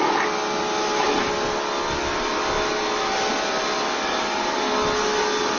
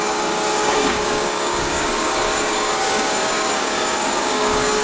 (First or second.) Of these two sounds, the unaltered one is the first